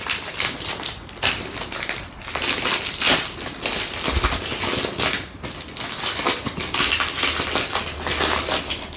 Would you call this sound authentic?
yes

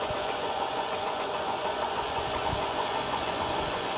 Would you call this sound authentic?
no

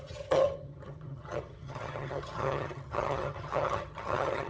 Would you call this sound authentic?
no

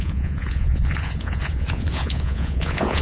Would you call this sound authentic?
no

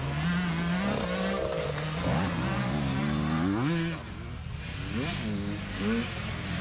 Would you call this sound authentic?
yes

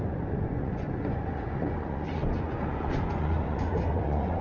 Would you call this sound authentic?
no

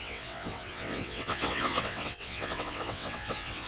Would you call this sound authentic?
no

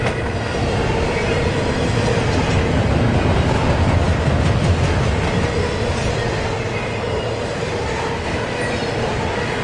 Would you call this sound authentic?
yes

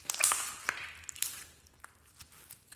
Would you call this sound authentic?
yes